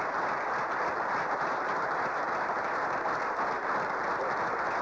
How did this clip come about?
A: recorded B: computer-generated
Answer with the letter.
A